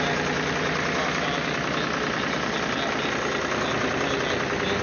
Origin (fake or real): real